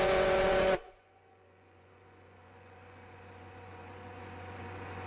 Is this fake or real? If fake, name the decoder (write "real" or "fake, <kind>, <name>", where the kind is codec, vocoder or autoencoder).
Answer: fake, vocoder, Vocos